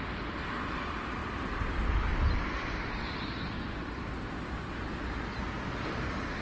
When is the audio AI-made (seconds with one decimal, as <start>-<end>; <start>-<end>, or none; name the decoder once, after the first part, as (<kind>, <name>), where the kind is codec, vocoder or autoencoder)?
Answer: none